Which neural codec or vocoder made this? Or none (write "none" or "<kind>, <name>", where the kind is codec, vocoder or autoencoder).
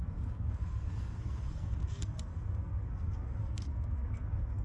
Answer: codec, SNAC